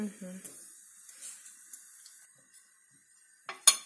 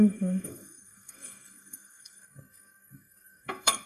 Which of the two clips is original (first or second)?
first